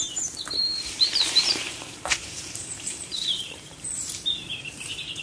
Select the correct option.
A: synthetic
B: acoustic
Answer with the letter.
A